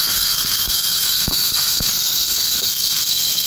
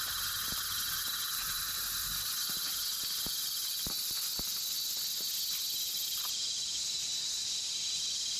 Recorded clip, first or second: second